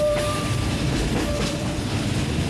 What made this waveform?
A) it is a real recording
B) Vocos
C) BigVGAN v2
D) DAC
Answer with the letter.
C